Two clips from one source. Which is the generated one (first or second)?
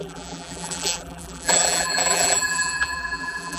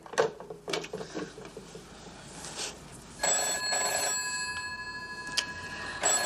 first